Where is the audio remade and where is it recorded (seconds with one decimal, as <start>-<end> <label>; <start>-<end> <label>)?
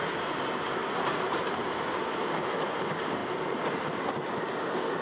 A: 0.0-2.0 recorded; 2.0-2.7 remade; 2.7-5.0 recorded